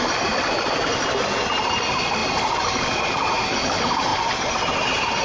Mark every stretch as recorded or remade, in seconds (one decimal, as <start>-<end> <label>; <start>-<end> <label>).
0.0-5.2 recorded